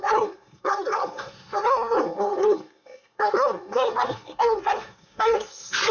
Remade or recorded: remade